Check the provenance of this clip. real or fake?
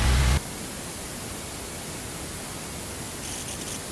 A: real